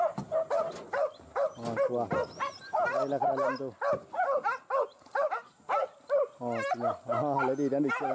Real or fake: real